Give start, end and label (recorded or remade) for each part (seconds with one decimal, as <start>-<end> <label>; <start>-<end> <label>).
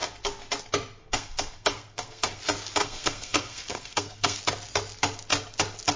0.0-1.0 recorded; 1.0-2.4 remade; 2.4-2.8 recorded; 2.8-4.4 remade; 4.4-6.0 recorded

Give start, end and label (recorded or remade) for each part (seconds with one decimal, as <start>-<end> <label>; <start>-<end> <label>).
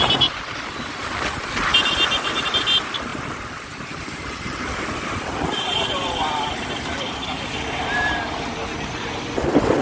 0.0-3.1 recorded; 3.1-8.1 remade; 8.1-9.8 recorded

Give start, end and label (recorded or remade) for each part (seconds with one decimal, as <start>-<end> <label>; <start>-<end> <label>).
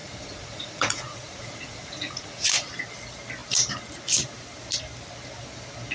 0.0-2.5 remade; 2.5-5.9 recorded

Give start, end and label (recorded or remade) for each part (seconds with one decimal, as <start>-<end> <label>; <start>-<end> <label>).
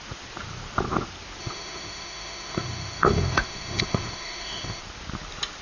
0.0-1.4 recorded; 1.4-4.8 remade; 4.8-5.6 recorded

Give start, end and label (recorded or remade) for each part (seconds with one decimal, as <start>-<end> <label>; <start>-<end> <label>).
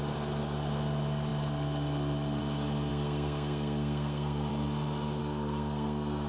0.0-2.9 recorded; 2.9-4.5 remade; 4.5-5.2 recorded; 5.2-6.3 remade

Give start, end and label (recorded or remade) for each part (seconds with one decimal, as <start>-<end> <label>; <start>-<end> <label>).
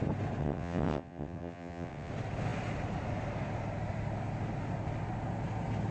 0.0-0.4 recorded; 0.4-2.1 remade; 2.1-5.9 recorded